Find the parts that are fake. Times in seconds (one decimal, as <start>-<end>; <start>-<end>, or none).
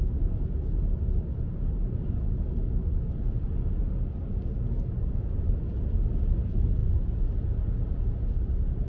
none